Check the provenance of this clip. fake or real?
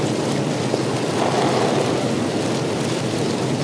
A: real